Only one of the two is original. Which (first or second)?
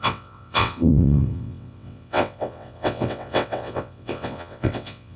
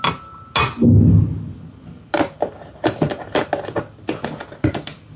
second